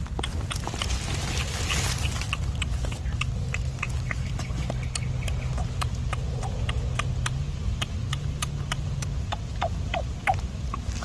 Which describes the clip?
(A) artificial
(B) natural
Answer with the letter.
B